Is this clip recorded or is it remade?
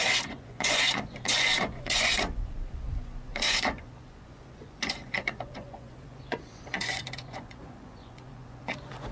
remade